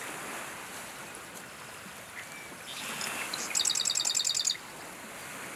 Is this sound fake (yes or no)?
no